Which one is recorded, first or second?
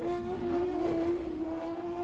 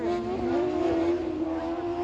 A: second